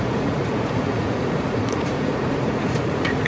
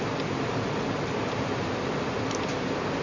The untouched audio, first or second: second